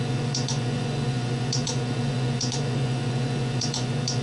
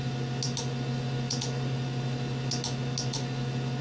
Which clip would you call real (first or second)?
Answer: second